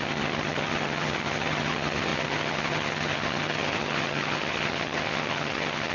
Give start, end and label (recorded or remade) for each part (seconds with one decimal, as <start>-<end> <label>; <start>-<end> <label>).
0.0-5.9 remade